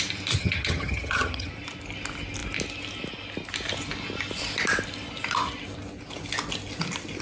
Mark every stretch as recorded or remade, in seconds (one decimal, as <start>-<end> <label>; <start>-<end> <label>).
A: 0.0-0.4 recorded; 0.4-1.5 remade; 1.5-7.2 recorded